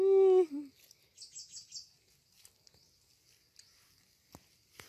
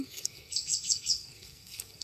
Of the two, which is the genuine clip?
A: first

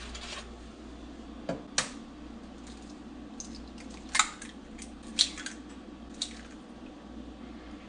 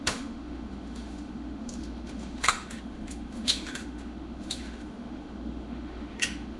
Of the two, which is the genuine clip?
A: first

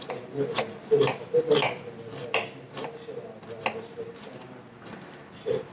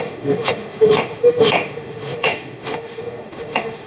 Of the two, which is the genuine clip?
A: first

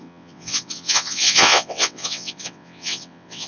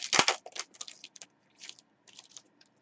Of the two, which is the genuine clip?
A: second